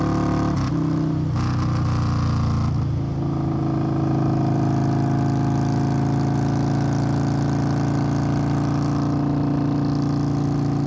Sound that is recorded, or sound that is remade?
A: recorded